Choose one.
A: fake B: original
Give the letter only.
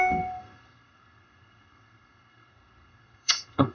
A